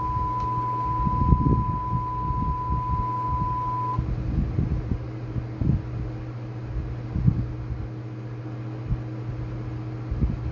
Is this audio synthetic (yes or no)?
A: no